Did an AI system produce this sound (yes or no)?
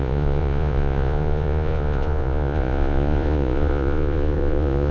yes